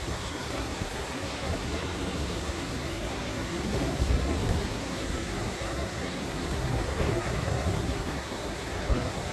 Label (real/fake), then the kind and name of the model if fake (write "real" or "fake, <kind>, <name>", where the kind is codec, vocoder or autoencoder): fake, codec, SNAC